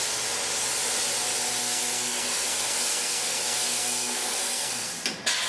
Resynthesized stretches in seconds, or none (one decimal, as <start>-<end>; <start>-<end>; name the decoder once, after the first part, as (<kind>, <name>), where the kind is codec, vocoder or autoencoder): 1.6-4.9 (codec, SNAC)